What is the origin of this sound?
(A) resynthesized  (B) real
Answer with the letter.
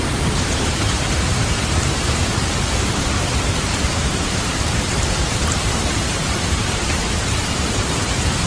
A